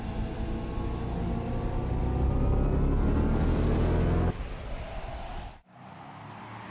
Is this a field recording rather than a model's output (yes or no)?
yes